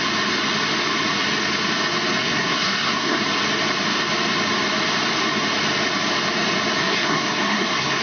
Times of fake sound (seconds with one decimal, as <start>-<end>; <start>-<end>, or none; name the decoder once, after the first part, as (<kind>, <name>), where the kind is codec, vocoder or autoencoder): 2.2-3.2 (codec, SNAC); 6.8-8.0